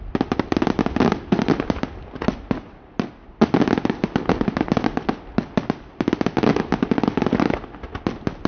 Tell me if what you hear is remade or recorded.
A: recorded